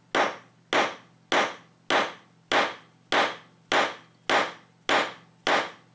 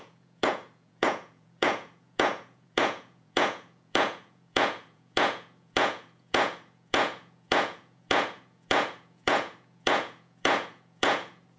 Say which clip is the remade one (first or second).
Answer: second